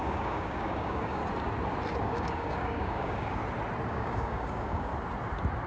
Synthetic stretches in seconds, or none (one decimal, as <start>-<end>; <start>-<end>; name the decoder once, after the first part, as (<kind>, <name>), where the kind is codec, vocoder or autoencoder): 0.0-1.2 (codec, DAC); 2.0-3.4; 3.9-4.9